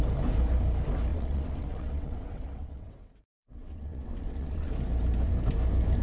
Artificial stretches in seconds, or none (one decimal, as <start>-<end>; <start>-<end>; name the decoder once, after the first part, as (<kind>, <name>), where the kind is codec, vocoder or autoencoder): 1.1-4.7 (vocoder, WaveNeXt)